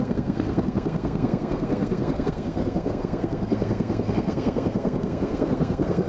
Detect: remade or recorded remade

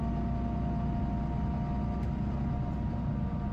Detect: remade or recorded recorded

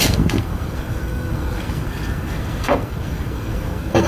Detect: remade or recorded remade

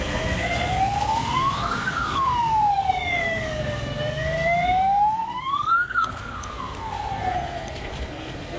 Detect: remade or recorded remade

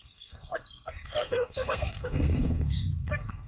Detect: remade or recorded remade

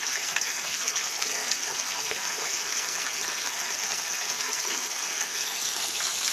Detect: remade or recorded remade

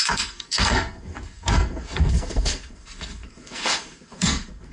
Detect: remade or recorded remade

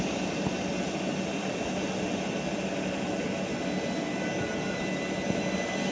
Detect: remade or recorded recorded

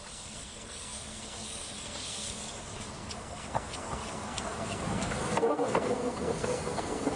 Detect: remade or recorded remade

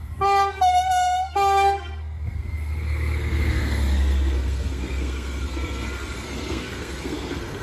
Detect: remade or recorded remade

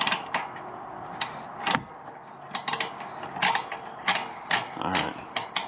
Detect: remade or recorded recorded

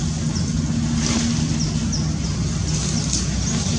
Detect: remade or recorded recorded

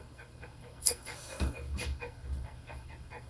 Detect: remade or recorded remade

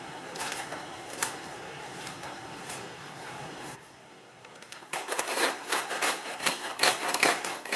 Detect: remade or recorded remade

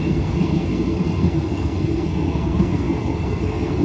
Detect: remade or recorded remade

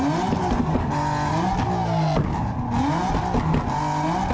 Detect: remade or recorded recorded